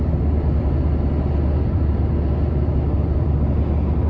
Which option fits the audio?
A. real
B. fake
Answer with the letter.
A